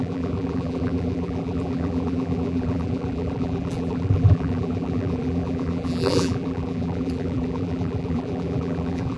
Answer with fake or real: fake